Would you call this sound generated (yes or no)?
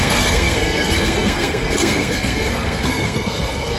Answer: yes